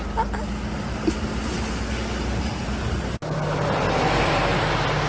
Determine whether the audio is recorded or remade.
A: recorded